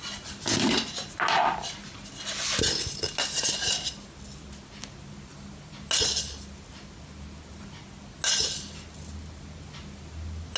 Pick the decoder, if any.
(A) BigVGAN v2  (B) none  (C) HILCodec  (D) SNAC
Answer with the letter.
B